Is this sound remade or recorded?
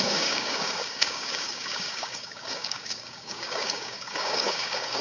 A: remade